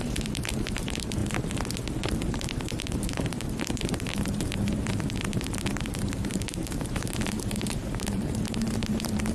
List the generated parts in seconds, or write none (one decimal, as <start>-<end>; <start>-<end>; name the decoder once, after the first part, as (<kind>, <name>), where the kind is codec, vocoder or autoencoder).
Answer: 0.0-1.2 (vocoder, BigVGAN v2); 2.2-9.3